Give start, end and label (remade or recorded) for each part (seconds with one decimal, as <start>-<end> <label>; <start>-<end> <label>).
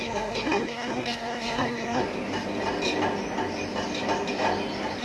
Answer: 0.0-2.0 remade; 2.0-5.0 recorded